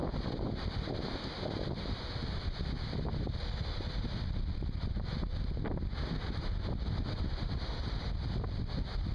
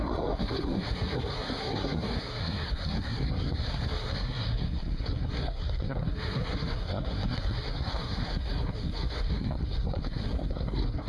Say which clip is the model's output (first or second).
second